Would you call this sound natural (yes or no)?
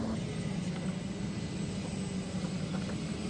yes